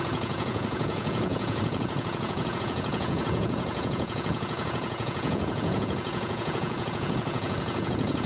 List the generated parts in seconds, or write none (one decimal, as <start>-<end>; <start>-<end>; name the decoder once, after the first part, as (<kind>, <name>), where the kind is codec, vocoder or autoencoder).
0.0-8.3 (vocoder, Vocos)